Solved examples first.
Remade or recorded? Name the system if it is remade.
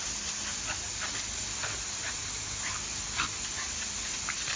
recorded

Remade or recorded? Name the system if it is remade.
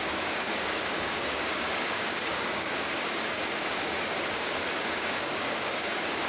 remade, codec, DAC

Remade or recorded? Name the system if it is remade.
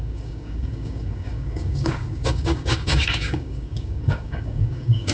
remade, codec, DAC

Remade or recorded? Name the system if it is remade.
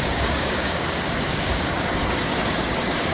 remade, codec, DAC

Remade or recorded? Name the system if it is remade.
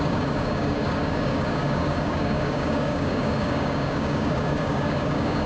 remade, codec, DAC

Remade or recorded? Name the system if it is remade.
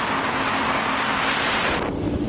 recorded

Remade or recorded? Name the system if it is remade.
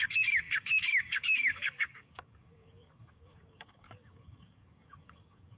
remade, codec, DAC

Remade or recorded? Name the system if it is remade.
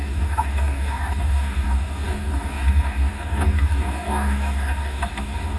remade, codec, DAC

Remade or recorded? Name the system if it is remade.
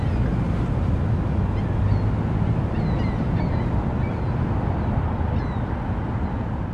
recorded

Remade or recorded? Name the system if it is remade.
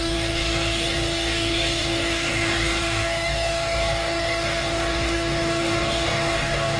remade, codec, DAC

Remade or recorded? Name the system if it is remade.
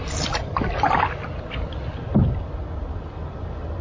recorded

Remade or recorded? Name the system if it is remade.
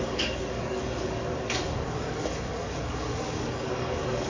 remade, codec, DAC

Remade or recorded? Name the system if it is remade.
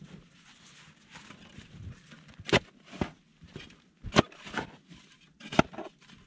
recorded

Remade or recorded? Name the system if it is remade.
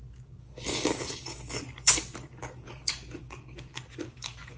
remade, codec, DAC